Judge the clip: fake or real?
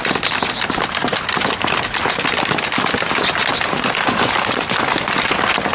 real